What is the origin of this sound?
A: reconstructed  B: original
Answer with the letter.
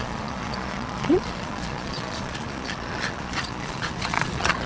A